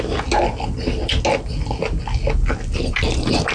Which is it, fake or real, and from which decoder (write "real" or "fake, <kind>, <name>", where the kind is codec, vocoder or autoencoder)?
real